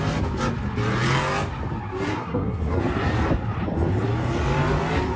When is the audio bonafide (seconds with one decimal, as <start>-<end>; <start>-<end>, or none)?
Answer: 0.0-2.1; 2.8-5.2